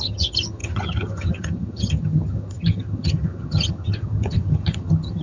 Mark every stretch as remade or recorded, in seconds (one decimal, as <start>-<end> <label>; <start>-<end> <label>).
0.0-5.2 remade